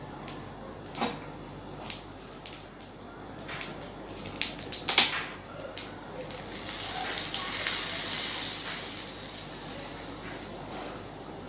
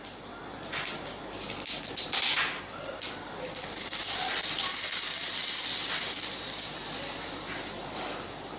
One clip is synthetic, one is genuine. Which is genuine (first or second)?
first